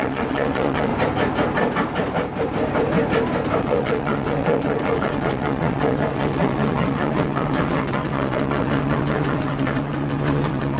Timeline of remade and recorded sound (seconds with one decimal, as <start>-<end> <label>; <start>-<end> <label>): 0.0-0.9 remade; 0.9-3.6 recorded; 3.6-10.8 remade